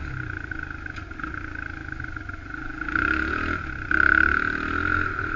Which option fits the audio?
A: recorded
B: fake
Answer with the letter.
A